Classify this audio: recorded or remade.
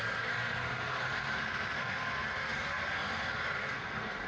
remade